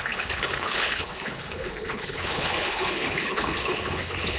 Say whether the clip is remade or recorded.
remade